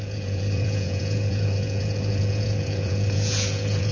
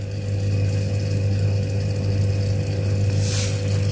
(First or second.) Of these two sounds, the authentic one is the second